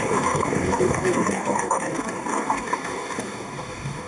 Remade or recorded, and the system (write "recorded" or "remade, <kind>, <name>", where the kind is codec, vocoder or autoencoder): remade, codec, DAC